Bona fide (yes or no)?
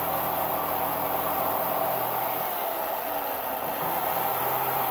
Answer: yes